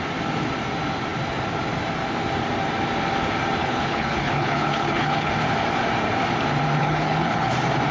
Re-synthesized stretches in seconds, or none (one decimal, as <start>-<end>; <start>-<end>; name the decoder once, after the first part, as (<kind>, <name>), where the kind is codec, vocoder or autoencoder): 3.6-5.3 (codec, HILCodec); 6.8-7.5